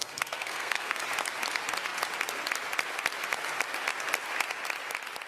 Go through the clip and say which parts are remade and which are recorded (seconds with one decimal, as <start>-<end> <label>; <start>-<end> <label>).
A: 0.0-1.0 remade; 1.0-5.3 recorded